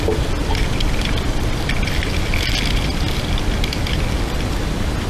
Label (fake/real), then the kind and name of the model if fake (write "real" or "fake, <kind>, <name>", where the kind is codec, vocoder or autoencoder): real